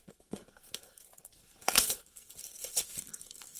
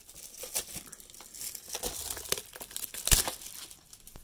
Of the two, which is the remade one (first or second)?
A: first